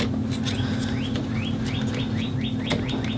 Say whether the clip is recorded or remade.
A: recorded